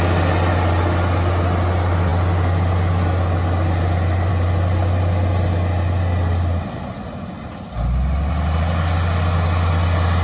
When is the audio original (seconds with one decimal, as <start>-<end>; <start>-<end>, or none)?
0.0-10.2